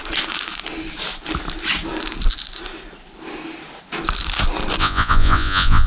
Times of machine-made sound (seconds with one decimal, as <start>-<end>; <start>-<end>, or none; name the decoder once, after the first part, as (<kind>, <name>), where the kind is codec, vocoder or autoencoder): 4.8-5.9 (vocoder, Vocos)